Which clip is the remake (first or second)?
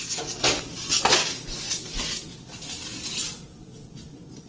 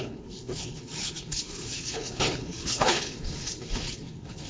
second